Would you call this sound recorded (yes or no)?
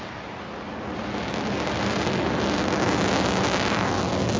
yes